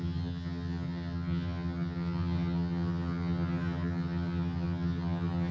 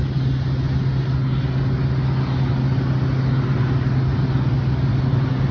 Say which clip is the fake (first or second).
first